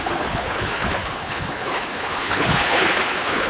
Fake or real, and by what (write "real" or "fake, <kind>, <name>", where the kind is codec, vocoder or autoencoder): fake, codec, HILCodec